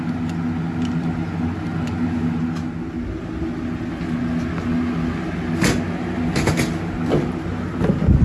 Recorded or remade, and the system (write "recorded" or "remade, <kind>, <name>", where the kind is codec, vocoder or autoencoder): recorded